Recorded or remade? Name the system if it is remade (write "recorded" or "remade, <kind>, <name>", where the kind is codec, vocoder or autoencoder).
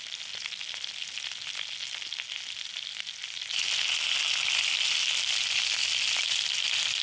recorded